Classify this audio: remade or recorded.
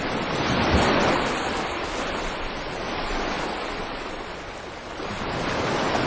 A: recorded